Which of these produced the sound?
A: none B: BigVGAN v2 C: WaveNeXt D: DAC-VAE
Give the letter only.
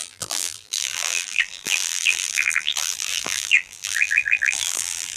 B